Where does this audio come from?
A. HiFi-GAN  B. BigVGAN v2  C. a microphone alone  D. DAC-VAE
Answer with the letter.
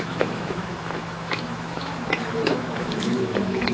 D